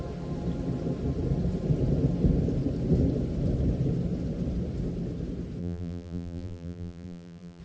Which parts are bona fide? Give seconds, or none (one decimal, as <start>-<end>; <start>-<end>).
0.0-5.6